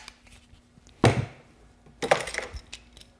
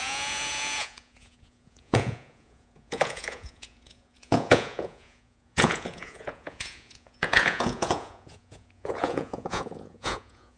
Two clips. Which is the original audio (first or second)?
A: first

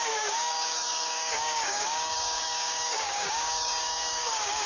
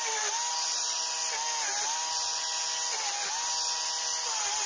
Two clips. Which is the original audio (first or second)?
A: second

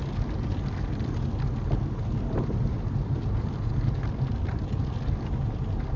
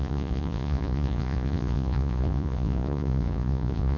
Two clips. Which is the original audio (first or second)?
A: first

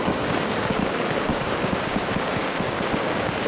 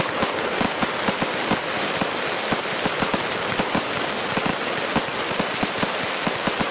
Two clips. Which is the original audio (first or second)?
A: second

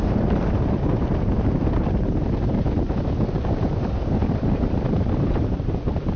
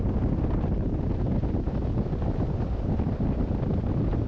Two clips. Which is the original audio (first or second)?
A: second